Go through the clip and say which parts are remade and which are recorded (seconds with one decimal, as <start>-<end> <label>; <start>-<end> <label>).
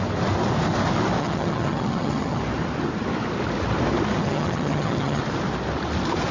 0.0-1.2 recorded; 1.2-2.4 remade; 2.4-4.2 recorded; 4.2-5.2 remade; 5.2-6.3 recorded